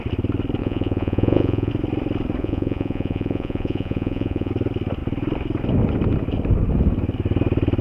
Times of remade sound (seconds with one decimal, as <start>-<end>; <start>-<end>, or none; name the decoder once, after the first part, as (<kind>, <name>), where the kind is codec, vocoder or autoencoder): 0.6-1.7 (vocoder, Vocos); 2.4-4.5